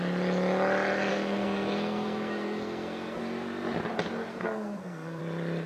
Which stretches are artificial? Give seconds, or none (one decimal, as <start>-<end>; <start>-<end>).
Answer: 1.1-3.2; 4.3-5.2